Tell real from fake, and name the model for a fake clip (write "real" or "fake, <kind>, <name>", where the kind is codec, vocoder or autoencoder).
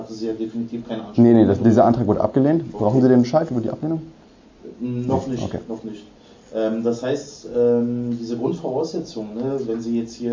real